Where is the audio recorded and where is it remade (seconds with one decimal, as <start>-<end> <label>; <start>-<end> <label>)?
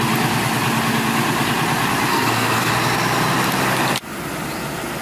0.0-2.1 recorded; 2.1-2.7 remade; 2.7-5.0 recorded